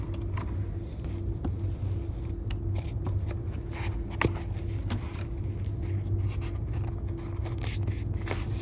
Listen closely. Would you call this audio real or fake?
real